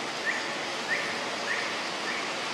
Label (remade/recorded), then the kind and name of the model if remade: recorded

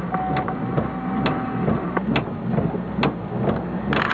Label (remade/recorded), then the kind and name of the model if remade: recorded